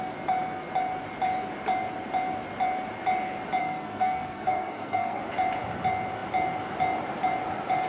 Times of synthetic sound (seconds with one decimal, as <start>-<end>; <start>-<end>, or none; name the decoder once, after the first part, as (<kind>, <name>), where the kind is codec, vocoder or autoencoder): 3.6-5.2 (codec, SNAC)

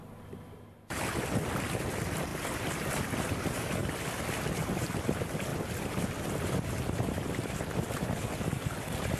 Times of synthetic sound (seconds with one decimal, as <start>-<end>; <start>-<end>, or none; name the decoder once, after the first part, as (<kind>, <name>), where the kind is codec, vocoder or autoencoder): 2.3-2.9 (vocoder, BigVGAN v2); 3.8-4.9